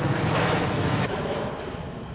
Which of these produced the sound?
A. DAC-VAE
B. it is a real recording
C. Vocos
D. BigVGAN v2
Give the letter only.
A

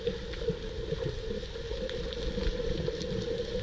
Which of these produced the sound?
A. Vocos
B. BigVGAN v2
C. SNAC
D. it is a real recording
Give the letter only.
D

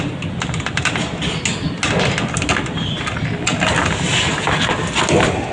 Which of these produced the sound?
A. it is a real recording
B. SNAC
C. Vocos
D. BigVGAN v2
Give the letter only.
A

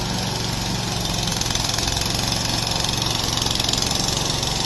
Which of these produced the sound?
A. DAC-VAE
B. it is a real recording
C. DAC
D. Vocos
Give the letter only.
B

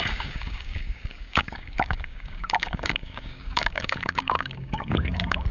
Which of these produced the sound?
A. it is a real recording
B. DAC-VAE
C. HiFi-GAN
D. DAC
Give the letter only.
D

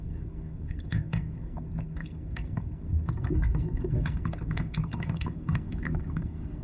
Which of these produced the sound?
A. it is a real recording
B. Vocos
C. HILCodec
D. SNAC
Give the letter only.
D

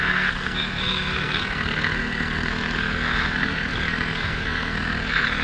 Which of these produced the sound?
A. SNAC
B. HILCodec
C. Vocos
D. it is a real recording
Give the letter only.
A